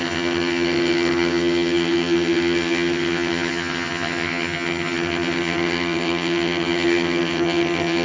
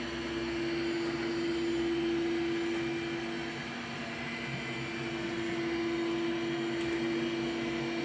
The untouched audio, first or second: second